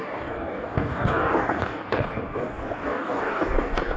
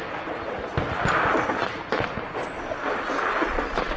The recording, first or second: second